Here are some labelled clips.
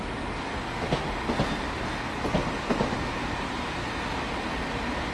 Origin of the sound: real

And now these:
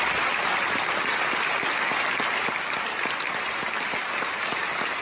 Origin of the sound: real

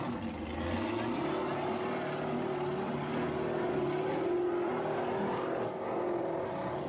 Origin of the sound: real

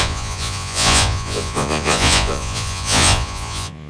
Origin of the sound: fake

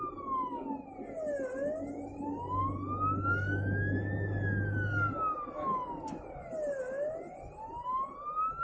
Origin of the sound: real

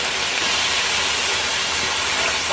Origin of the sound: real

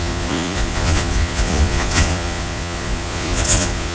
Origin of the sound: fake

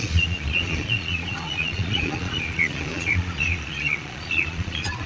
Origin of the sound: fake